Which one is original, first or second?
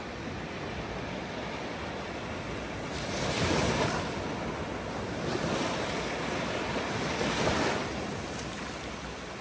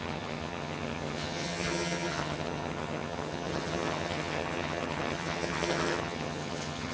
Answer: first